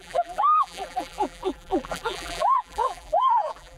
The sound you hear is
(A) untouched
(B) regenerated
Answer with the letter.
B